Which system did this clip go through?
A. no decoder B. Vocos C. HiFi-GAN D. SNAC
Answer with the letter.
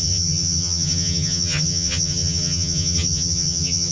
C